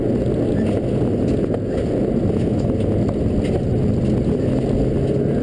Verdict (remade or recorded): recorded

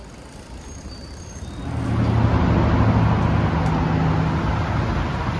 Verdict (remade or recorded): recorded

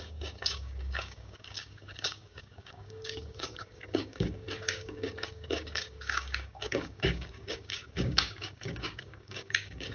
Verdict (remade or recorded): remade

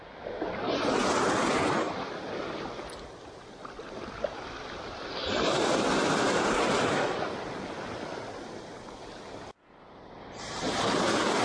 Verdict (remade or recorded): recorded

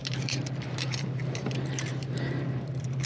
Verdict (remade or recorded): remade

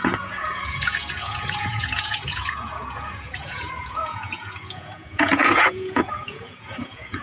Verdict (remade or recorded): remade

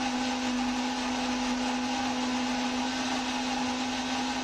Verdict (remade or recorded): recorded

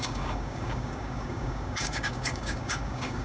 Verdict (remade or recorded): remade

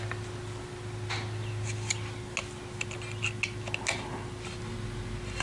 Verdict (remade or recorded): recorded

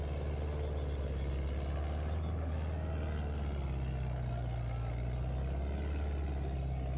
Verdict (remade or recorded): recorded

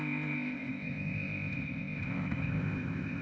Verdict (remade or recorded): remade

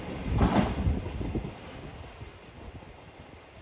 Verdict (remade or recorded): recorded